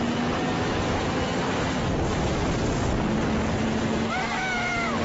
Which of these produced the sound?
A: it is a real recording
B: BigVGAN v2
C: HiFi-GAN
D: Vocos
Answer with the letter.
A